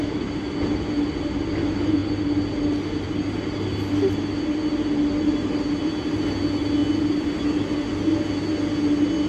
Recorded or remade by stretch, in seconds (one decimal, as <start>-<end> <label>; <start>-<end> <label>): 0.0-9.3 recorded